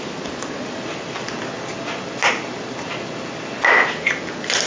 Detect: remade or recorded recorded